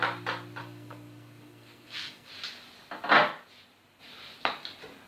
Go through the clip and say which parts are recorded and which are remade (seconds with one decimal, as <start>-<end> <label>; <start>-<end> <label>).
0.0-0.6 recorded; 0.6-2.3 remade; 2.3-5.1 recorded